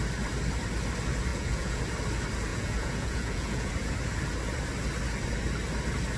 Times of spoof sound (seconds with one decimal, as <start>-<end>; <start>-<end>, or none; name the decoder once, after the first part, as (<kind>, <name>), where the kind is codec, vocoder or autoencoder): 1.3-1.8 (vocoder, Vocos); 2.5-3.7